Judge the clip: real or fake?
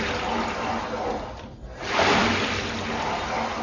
real